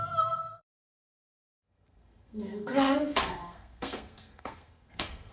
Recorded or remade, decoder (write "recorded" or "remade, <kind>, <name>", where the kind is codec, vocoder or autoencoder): remade, codec, SNAC